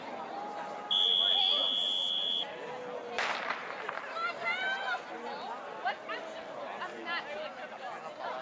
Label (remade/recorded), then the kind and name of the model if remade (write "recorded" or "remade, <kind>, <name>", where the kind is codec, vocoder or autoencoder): recorded